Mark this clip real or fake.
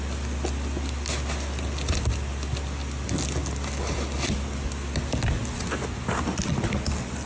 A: real